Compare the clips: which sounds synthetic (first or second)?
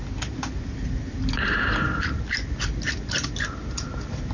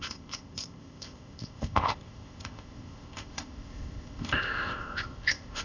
second